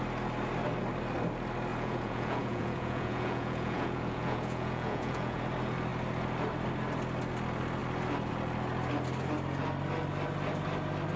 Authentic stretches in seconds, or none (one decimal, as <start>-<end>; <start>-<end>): 0.0-1.7; 5.4-11.2